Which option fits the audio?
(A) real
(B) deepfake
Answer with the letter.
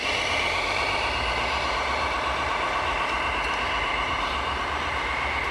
B